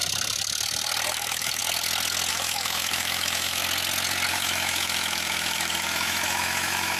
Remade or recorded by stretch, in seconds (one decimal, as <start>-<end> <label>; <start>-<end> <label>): 0.0-1.1 recorded; 1.1-1.6 remade; 1.6-2.3 recorded; 2.3-3.6 remade; 3.6-4.3 recorded; 4.3-7.0 remade